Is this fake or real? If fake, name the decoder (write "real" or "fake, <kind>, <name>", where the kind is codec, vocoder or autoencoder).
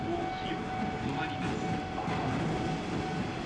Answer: real